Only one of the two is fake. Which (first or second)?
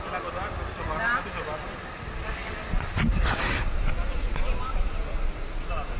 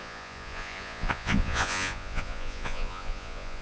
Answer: second